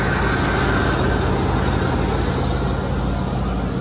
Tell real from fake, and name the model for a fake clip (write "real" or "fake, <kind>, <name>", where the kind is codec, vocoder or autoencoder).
real